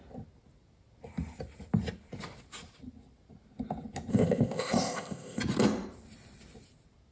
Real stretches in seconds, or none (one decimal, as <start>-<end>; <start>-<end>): 0.0-4.1; 5.4-7.1